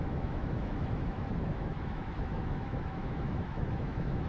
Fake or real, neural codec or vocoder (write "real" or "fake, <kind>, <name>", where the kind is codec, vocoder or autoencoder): fake, autoencoder, DAC-VAE